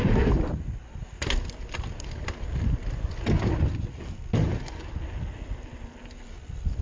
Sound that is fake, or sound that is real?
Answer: real